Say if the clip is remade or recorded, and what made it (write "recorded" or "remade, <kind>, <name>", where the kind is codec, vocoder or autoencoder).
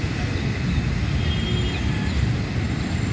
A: recorded